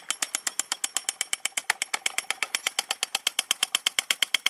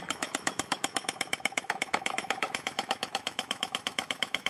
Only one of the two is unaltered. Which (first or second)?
first